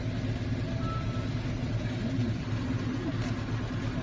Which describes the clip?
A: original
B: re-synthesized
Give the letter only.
A